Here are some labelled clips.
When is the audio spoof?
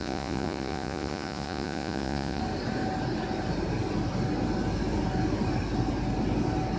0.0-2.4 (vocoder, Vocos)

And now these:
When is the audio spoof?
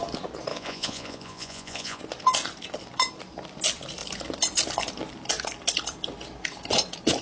0.5-2.0 (vocoder, Vocos)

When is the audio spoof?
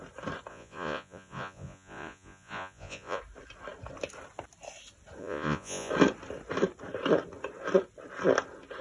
0.5-3.2 (vocoder, Vocos); 5.2-5.9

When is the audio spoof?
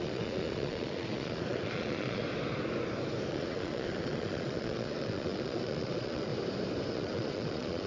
0.0-2.2 (vocoder, Vocos); 3.3-6.3; 6.9-7.9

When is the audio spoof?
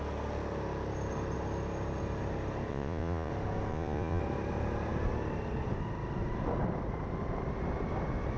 2.7-3.3 (vocoder, Vocos); 3.7-4.2